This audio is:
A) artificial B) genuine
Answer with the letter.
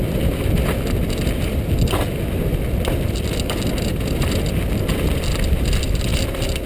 B